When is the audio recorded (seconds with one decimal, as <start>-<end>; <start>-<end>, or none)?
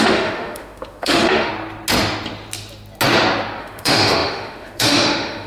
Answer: 1.5-3.6